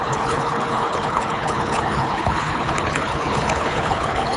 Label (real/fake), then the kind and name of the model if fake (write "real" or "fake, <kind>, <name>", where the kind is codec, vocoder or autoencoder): fake, codec, HILCodec